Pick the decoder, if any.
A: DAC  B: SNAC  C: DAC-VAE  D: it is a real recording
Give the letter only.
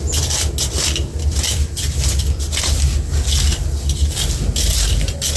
D